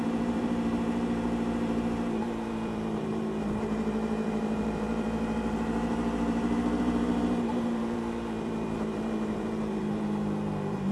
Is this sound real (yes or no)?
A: no